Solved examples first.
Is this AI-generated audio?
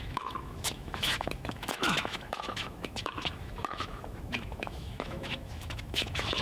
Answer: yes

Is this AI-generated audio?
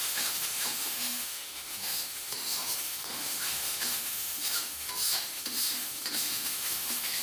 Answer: yes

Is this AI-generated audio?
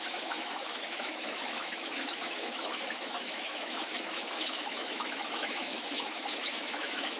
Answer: yes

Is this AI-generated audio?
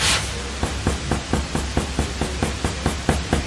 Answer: no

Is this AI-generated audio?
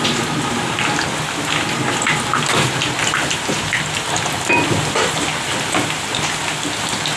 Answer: no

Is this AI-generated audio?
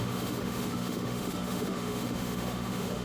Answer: yes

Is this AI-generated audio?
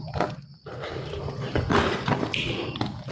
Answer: no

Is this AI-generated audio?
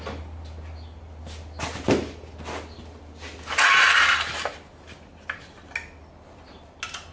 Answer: no